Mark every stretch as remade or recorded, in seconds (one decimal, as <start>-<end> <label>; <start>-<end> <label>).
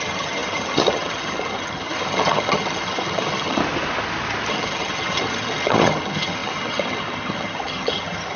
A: 0.0-3.6 remade; 3.6-4.5 recorded; 4.5-8.4 remade